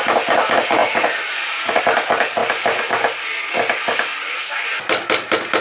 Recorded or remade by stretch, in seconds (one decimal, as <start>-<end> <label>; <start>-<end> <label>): 0.0-0.8 recorded; 0.8-1.8 remade; 1.8-5.6 recorded